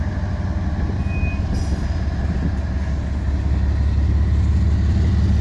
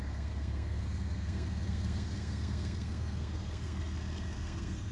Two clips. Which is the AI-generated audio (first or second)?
second